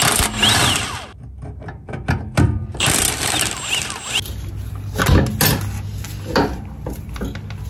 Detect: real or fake real